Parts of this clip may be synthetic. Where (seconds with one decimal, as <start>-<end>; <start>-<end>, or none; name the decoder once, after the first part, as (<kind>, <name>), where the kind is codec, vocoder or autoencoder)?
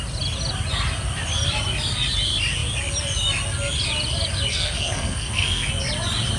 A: 4.5-5.7 (codec, SNAC)